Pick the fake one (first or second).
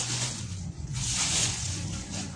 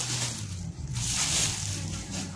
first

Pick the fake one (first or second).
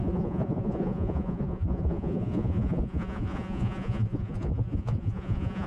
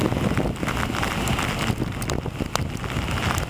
first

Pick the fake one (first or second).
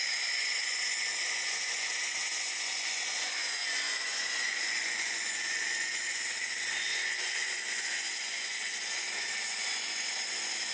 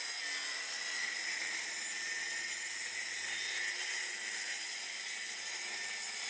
first